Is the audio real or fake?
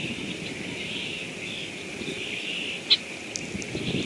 real